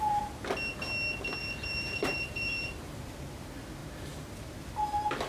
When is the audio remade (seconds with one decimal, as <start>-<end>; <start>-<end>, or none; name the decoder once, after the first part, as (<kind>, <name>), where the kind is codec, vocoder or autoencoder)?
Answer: 1.4-3.0 (vocoder, BigVGAN v2); 3.8-4.3